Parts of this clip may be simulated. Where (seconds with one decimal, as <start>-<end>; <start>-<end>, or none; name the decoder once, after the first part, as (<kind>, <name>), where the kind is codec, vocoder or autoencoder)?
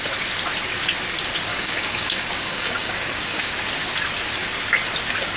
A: 1.5-3.5 (codec, DAC)